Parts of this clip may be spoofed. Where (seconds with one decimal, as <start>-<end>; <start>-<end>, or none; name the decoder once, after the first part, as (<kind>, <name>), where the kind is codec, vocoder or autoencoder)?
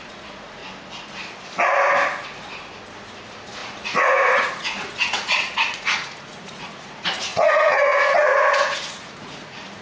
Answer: 0.0-0.6 (vocoder, Vocos); 3.2-9.8